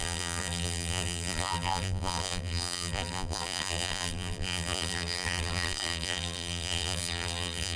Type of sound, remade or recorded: remade